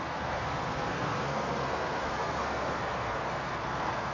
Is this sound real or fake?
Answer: fake